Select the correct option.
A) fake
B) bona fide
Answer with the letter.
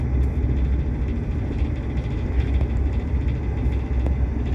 B